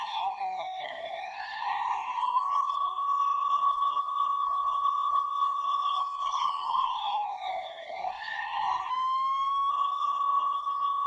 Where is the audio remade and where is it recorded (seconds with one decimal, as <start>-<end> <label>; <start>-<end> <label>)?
0.0-8.9 remade; 8.9-9.7 recorded; 9.7-11.1 remade